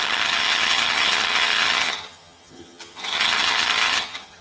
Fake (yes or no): yes